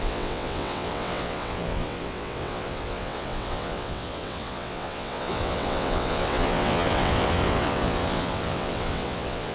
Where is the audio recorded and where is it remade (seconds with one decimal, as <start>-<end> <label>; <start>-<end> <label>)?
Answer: 0.0-9.5 remade